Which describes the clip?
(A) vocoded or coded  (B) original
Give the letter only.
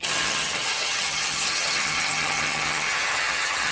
A